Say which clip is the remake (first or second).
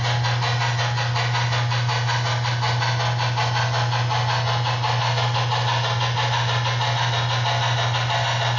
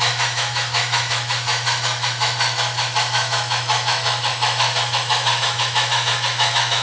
second